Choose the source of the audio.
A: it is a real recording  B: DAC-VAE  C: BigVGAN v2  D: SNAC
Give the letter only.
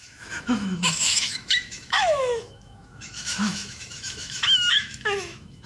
B